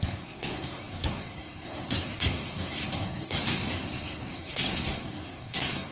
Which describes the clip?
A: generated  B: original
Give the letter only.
A